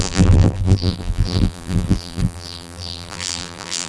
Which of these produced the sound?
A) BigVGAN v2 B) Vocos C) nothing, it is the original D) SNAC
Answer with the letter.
A